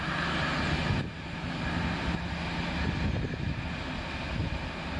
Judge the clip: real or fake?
real